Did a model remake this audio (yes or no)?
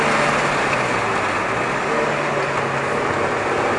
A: no